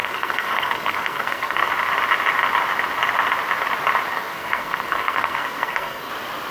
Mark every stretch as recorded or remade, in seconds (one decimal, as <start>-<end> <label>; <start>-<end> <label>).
0.0-1.7 remade; 1.7-4.1 recorded; 4.1-6.1 remade; 6.1-6.5 recorded